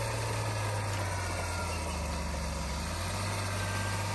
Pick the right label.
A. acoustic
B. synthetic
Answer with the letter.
A